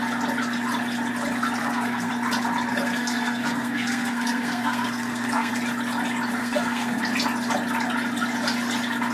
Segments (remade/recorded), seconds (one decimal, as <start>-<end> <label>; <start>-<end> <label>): 0.0-1.6 recorded; 1.6-2.1 remade; 2.1-2.7 recorded; 2.7-5.5 remade; 5.5-6.4 recorded; 6.4-7.0 remade; 7.0-9.1 recorded